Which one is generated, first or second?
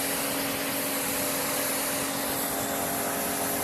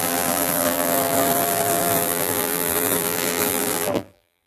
second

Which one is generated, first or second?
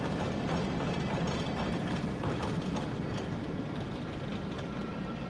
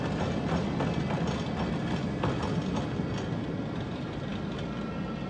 first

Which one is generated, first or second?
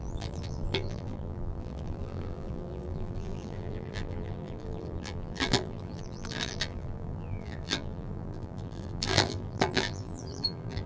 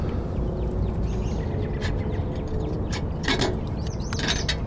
first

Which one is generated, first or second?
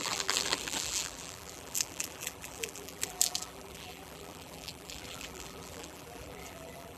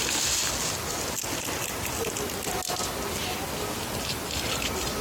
first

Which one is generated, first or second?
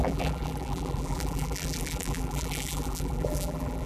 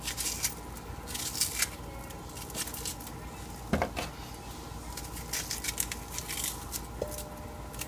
first